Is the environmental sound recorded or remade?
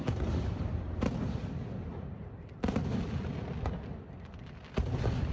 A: recorded